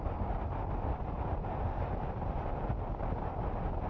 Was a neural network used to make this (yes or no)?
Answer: no